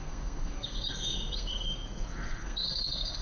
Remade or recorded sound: remade